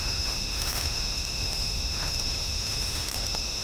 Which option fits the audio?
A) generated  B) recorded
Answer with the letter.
A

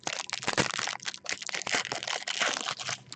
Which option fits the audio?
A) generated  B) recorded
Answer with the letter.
B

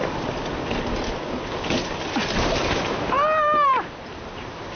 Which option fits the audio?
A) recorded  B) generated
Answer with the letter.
A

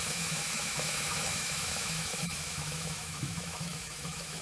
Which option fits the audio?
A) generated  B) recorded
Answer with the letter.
A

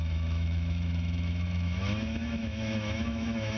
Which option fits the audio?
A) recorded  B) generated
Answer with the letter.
B